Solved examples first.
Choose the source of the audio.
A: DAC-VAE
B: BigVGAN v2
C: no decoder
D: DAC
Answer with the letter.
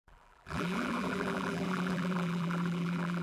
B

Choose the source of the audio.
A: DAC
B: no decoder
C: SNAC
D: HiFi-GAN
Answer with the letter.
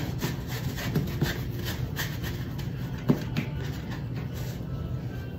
B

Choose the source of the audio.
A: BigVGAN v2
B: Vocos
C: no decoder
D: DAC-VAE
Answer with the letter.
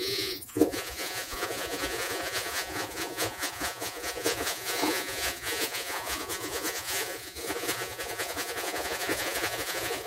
B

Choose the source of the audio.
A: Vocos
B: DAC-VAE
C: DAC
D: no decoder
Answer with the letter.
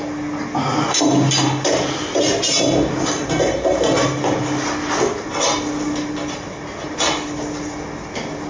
D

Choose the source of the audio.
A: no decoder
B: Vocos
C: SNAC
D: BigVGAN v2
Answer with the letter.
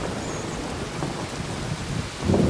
A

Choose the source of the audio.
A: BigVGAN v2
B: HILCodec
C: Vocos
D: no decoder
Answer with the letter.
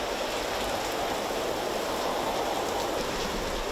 D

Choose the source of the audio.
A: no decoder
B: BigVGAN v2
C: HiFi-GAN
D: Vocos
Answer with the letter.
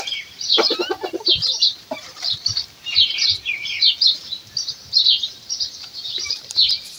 B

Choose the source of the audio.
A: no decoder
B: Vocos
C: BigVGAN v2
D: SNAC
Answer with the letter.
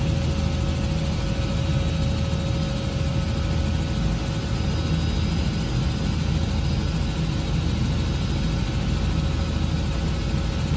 A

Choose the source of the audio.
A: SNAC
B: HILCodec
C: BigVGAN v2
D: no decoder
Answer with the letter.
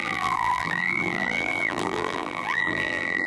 C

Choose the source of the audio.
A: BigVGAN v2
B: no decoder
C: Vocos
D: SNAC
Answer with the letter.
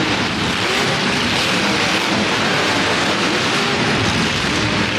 A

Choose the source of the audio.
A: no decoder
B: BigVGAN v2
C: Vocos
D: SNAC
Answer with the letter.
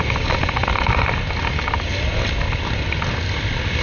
A